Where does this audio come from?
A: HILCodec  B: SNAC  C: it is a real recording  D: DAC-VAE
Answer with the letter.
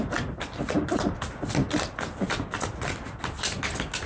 C